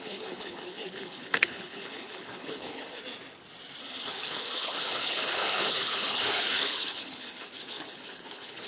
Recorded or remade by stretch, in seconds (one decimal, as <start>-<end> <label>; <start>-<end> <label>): 0.0-3.0 remade; 3.0-3.8 recorded; 3.8-8.7 remade